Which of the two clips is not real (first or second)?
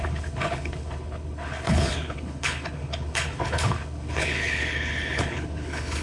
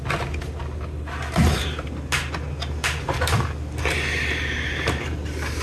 first